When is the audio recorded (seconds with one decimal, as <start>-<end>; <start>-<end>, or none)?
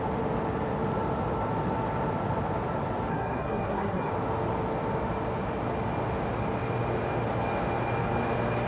0.0-3.1; 4.1-8.7